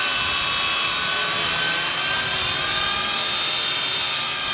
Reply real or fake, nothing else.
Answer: real